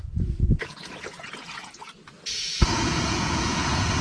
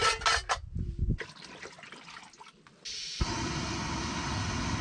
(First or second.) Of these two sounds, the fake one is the first